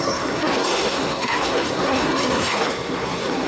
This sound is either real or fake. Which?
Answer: fake